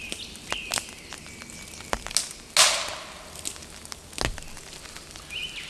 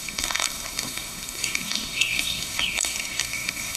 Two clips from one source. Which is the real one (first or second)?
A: first